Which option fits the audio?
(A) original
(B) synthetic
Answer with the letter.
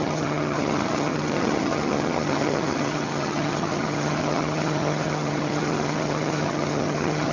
B